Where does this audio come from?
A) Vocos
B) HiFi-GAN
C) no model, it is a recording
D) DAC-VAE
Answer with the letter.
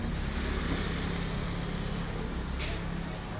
C